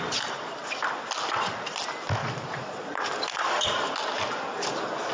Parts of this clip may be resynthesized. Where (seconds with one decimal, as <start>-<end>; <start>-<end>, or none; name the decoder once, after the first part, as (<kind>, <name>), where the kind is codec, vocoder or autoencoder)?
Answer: 2.2-3.0 (vocoder, Vocos)